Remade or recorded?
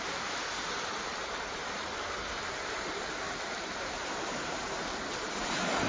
remade